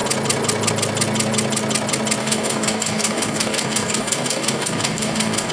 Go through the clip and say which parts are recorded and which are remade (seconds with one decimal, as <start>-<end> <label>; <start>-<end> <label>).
0.0-2.2 recorded; 2.2-5.5 remade